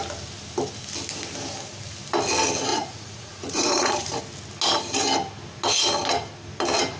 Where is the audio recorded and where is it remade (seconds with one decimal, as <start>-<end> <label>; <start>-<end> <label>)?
0.0-2.7 recorded; 2.7-4.2 remade; 4.2-7.0 recorded

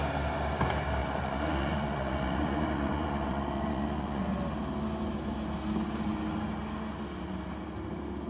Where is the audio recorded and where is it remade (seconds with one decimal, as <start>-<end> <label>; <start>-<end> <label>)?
0.0-1.0 recorded; 1.0-4.2 remade; 4.2-8.3 recorded

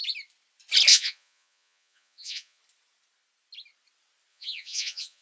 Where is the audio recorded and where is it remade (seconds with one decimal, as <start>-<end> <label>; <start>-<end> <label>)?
0.0-0.9 recorded; 0.9-2.6 remade; 2.6-4.3 recorded; 4.3-5.2 remade